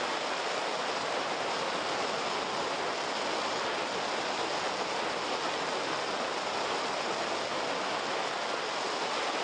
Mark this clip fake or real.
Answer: real